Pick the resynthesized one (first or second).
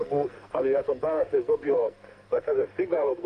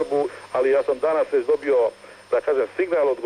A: first